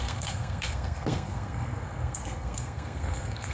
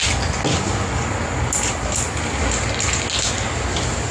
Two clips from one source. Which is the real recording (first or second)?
second